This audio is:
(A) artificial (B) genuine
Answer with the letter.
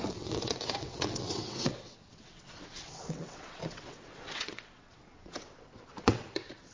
A